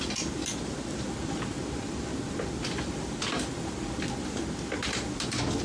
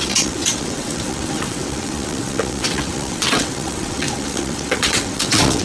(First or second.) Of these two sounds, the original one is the first